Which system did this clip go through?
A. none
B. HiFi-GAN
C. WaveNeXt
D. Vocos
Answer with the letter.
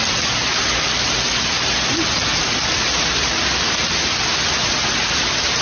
A